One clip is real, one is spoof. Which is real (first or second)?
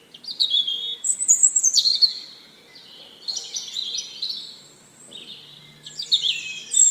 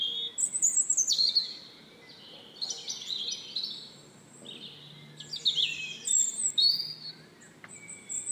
second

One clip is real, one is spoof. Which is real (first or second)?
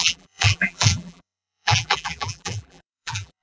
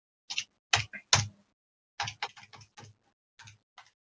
second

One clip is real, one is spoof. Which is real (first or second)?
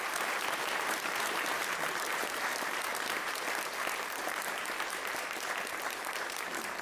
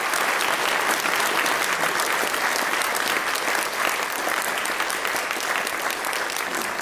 second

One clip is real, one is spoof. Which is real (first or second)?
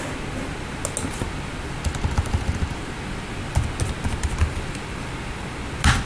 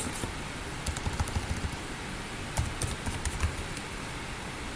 first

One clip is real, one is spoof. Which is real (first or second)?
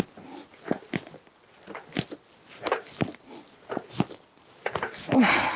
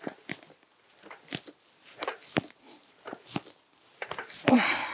first